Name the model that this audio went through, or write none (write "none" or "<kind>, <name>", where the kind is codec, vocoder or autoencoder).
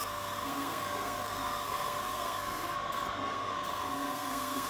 codec, SNAC